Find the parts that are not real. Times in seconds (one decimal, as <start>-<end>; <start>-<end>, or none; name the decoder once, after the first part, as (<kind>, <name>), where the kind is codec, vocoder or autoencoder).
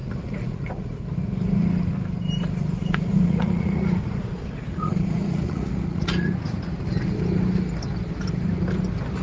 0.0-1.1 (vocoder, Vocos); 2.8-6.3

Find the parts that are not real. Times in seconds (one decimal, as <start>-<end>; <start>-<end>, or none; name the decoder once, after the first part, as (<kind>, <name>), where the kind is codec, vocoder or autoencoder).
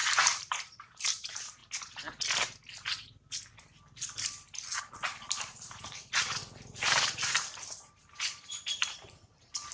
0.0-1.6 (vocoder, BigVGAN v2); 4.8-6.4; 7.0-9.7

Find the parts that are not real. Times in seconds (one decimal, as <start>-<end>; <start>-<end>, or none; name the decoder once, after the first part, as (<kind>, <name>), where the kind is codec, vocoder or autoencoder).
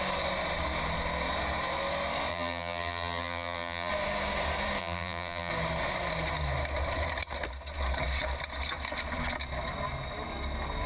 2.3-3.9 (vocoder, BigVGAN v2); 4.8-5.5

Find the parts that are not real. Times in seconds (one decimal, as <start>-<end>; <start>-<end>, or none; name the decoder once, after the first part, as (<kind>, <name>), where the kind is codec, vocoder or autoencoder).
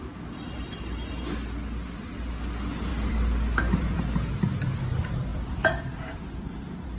2.9-4.0 (vocoder, BigVGAN v2); 5.3-5.8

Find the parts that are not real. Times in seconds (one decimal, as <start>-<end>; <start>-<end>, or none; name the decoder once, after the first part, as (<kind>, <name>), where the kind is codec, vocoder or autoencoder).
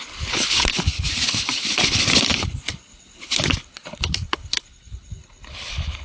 0.0-6.0 (codec, HILCodec)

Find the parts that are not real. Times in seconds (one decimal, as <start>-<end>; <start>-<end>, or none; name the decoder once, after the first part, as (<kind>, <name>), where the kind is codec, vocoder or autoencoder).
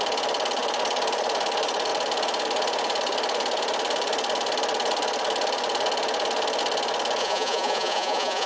7.2-8.5 (vocoder, Vocos)